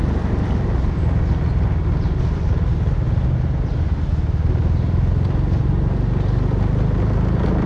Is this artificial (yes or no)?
no